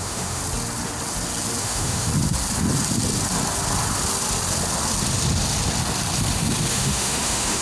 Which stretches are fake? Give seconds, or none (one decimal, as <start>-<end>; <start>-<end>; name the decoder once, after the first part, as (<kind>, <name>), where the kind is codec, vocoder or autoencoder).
0.0-0.4 (autoencoder, DAC-VAE); 1.6-2.1; 6.7-7.6